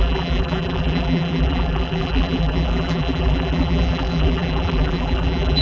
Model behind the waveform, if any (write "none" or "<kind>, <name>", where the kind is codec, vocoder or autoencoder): vocoder, BigVGAN v2